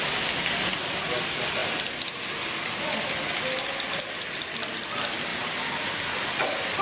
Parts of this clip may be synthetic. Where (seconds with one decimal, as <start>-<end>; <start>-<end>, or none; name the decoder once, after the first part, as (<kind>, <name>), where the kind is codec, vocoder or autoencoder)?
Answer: 5.3-6.0 (vocoder, BigVGAN v2)

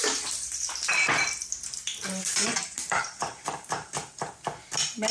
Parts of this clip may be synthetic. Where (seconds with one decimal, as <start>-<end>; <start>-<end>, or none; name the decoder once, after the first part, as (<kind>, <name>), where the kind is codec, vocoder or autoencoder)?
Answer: 1.9-4.3 (vocoder, BigVGAN v2)

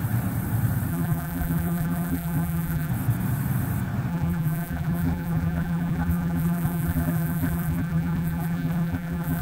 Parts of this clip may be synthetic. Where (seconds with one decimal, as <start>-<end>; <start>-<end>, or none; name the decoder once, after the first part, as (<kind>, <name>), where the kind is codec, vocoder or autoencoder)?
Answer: 0.9-2.9 (vocoder, BigVGAN v2); 4.1-9.4